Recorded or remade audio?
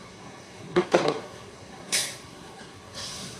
remade